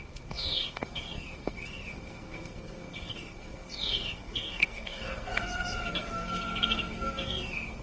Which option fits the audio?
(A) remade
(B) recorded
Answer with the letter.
A